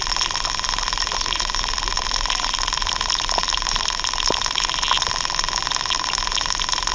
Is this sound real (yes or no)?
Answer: yes